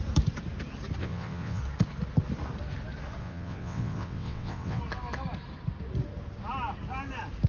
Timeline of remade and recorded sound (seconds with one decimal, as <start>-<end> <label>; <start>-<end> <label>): 0.0-1.0 recorded; 1.0-1.6 remade; 1.6-3.2 recorded; 3.2-4.8 remade; 4.8-7.5 recorded